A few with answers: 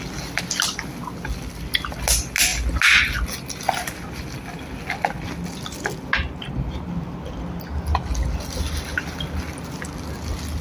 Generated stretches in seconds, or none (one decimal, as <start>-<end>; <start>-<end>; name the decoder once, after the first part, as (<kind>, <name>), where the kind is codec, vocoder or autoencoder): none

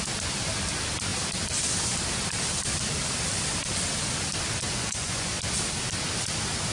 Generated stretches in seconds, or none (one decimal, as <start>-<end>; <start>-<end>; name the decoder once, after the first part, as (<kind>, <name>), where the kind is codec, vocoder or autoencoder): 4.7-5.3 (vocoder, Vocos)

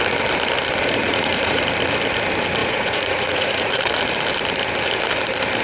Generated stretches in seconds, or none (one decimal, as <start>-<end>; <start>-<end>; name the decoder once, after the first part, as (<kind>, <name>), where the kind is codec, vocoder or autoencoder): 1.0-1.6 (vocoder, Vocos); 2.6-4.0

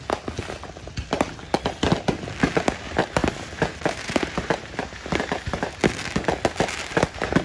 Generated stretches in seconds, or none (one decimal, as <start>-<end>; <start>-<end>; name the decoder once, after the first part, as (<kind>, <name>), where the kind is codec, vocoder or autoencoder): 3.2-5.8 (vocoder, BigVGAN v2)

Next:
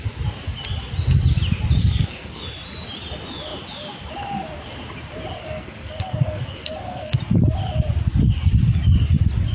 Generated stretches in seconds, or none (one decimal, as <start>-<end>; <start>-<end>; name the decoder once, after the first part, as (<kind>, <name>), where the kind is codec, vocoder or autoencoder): 1.8-2.4 (codec, SNAC); 5.4-7.2